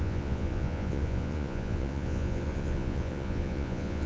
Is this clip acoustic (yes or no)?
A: no